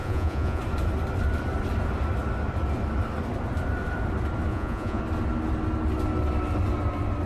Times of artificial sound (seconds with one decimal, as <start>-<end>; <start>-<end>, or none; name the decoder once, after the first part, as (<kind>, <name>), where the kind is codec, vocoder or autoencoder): 0.0-0.6 (vocoder, Vocos); 4.5-5.0